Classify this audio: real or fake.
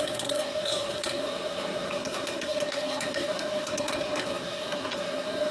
fake